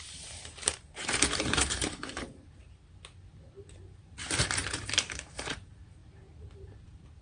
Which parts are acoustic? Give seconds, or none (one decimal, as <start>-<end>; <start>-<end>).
2.6-4.0; 6.0-6.8